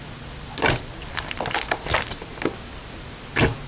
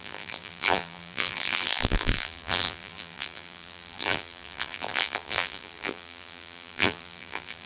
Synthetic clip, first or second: second